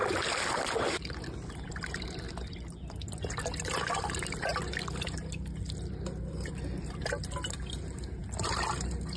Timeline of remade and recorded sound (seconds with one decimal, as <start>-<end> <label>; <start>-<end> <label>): 0.0-9.2 recorded